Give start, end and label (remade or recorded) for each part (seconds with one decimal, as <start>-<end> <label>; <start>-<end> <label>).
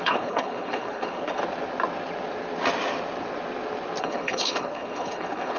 0.0-1.4 remade; 1.4-4.0 recorded; 4.0-5.6 remade